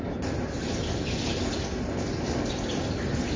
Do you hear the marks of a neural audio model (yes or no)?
no